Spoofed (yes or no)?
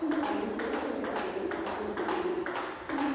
no